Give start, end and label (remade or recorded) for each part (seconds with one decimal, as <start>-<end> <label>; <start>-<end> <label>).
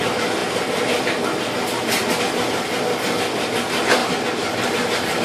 0.0-5.2 recorded